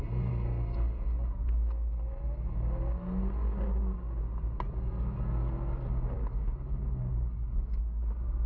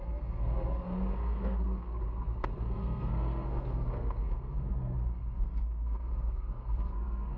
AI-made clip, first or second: second